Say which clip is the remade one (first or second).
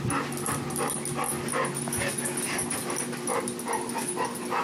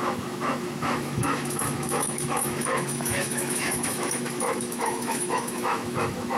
second